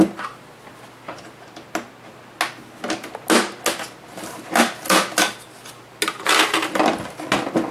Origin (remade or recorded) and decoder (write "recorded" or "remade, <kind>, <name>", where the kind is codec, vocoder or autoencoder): recorded